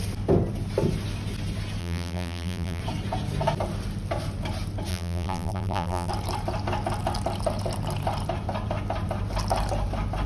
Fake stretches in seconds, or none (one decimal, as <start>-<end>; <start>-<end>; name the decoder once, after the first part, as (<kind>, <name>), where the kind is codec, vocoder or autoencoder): 1.8-2.8 (vocoder, BigVGAN v2); 4.9-6.1